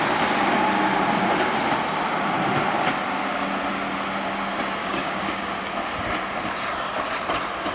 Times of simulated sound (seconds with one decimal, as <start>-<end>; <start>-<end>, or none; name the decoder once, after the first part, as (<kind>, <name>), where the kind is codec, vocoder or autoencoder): 4.8-5.6 (codec, DAC)